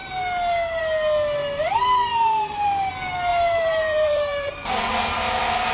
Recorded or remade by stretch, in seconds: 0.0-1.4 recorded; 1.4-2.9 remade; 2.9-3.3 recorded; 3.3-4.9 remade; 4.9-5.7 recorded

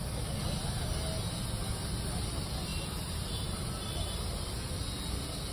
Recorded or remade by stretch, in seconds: 0.0-2.7 recorded; 2.7-3.8 remade; 3.8-5.5 recorded

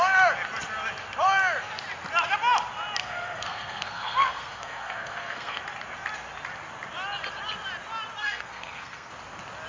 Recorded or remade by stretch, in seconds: 0.0-3.0 recorded; 3.0-5.6 remade; 5.6-8.2 recorded; 8.2-9.1 remade; 9.1-9.7 recorded